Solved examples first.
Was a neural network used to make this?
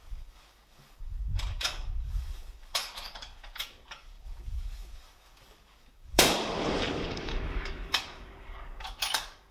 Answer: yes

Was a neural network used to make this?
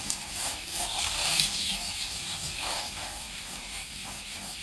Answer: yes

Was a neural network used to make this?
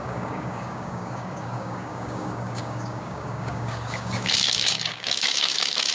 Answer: yes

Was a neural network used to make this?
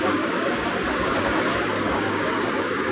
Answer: yes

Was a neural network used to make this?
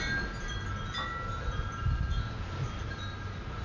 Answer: no